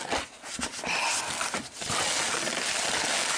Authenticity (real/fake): real